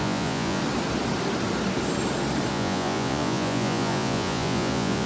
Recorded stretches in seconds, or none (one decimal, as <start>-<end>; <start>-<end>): 0.6-2.5